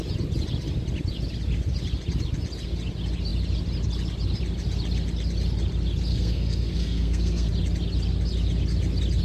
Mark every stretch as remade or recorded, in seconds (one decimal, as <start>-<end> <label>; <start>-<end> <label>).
0.0-6.1 recorded; 6.1-7.5 remade; 7.5-9.2 recorded